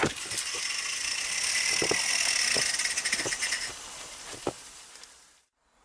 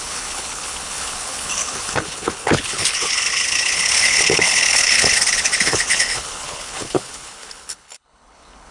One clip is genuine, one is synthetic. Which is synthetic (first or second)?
second